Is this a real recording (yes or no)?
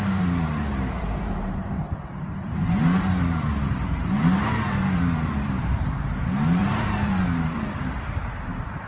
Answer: no